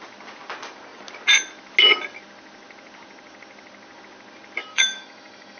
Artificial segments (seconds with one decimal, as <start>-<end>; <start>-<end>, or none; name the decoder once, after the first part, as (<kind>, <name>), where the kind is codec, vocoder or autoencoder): 4.6-5.6 (autoencoder, DAC-VAE)